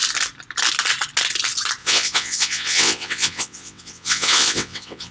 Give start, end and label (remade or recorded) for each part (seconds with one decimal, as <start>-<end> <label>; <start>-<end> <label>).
0.0-1.8 recorded; 1.8-5.1 remade